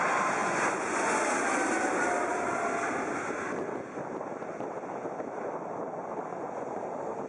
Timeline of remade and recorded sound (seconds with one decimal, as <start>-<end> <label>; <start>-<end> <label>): 0.0-0.4 recorded; 0.4-1.2 remade; 1.2-6.3 recorded; 6.3-6.8 remade; 6.8-7.3 recorded